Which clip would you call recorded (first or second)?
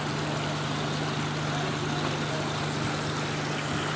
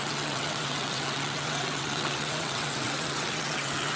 first